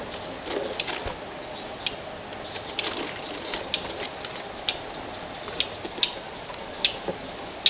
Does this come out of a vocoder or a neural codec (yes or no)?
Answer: no